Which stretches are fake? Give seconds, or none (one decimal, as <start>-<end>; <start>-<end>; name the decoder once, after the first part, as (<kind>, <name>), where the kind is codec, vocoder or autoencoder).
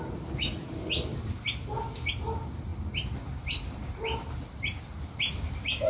none